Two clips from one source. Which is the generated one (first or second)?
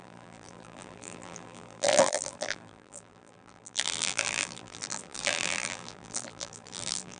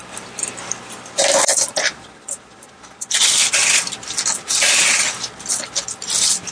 first